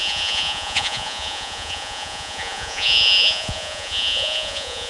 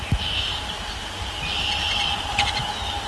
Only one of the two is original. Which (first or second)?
second